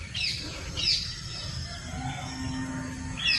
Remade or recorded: recorded